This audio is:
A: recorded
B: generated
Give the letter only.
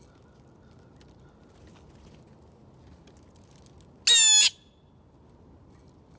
A